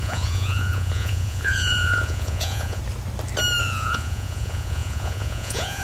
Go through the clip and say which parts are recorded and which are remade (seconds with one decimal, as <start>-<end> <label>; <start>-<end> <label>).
0.0-2.8 remade; 2.8-3.6 recorded; 3.6-5.8 remade